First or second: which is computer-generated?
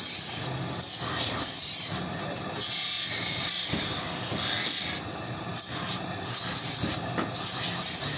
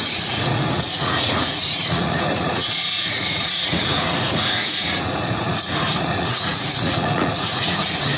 second